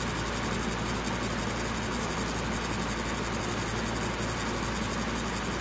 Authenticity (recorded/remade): recorded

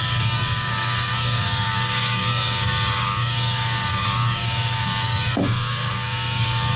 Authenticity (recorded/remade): remade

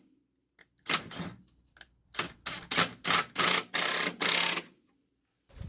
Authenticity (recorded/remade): recorded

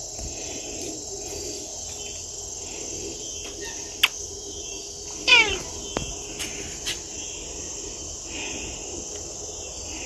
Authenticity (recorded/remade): recorded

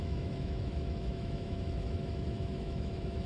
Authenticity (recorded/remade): remade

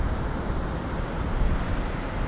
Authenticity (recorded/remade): recorded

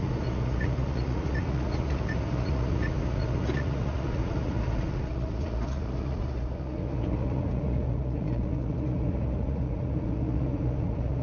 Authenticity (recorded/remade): remade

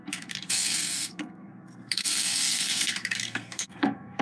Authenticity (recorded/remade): remade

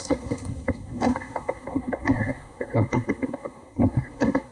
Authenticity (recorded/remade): remade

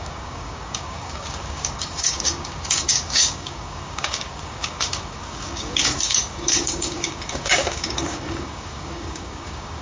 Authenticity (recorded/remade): remade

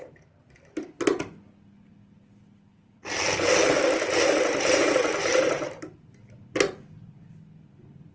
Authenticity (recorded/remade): recorded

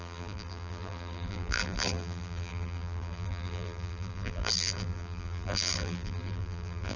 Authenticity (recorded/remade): remade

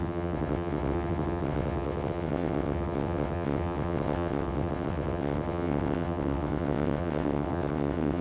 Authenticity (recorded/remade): remade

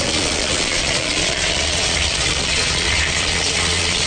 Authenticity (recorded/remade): remade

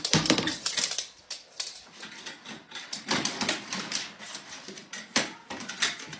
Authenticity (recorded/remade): recorded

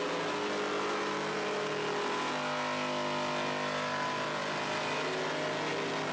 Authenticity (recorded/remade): recorded